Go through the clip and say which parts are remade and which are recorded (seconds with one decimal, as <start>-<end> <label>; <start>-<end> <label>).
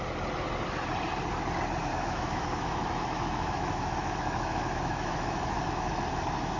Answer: 0.0-1.9 recorded; 1.9-5.9 remade; 5.9-6.6 recorded